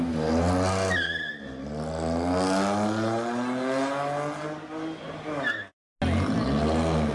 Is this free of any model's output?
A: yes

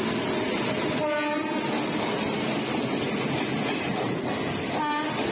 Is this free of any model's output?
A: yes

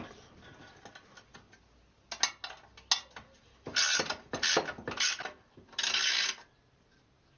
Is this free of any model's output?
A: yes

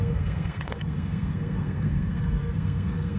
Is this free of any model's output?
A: no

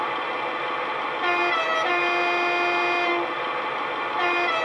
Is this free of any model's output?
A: yes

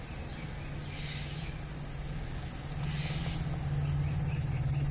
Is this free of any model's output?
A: yes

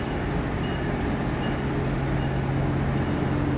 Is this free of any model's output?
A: yes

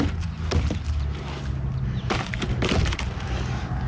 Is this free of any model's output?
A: yes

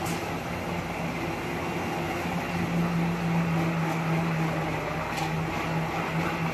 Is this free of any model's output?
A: yes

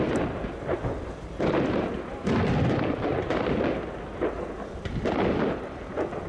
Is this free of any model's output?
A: yes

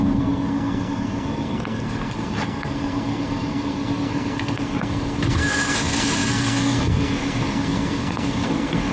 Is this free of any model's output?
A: no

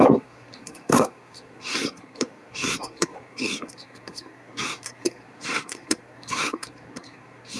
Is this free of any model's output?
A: no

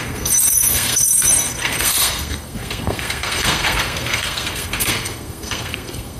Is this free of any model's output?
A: no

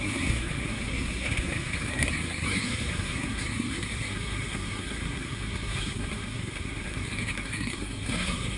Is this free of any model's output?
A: no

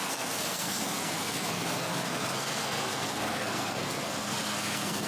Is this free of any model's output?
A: no